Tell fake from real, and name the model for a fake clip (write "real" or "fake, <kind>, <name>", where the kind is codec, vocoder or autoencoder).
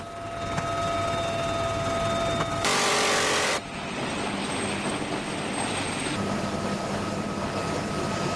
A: real